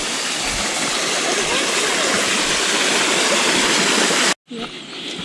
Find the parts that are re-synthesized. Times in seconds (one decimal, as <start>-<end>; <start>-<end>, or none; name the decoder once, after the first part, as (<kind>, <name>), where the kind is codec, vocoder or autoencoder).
none